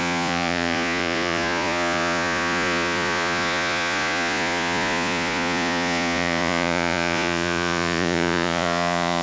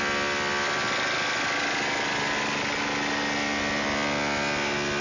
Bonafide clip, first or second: second